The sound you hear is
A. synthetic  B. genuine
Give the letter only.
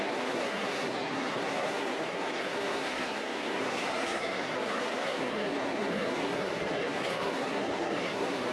A